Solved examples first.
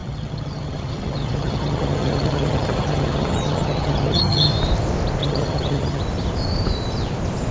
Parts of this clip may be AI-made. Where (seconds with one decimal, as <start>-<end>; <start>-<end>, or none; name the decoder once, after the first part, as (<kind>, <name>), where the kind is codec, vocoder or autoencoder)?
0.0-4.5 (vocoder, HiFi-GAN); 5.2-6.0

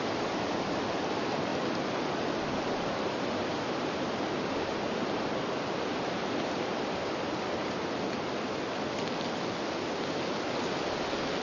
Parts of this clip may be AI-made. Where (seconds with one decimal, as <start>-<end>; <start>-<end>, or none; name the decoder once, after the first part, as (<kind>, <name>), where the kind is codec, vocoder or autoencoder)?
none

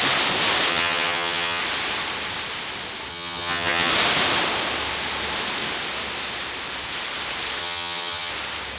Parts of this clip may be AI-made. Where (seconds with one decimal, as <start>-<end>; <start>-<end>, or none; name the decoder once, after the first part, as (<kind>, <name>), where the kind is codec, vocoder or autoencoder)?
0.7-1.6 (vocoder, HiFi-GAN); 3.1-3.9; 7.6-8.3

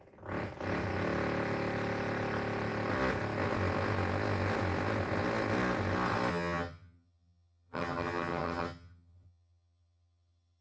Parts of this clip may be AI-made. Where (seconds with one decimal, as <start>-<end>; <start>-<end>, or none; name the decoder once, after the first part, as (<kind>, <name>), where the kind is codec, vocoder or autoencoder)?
6.3-10.6 (vocoder, HiFi-GAN)

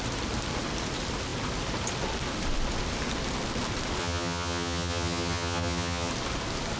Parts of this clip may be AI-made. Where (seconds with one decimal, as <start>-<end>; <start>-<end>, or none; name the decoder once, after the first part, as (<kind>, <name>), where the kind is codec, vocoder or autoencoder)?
4.0-6.1 (vocoder, HiFi-GAN)

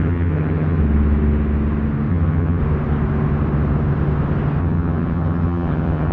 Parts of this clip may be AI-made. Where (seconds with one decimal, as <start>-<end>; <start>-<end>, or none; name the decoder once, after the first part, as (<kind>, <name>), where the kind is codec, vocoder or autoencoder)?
0.0-0.8 (vocoder, HiFi-GAN); 2.1-2.6; 4.6-6.1

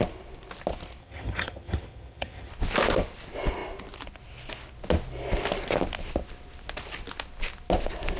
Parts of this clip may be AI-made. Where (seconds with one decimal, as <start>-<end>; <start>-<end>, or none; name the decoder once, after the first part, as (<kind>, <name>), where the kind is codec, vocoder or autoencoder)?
1.0-2.5 (vocoder, HiFi-GAN)